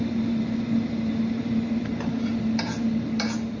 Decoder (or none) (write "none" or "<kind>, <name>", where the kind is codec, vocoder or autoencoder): vocoder, BigVGAN v2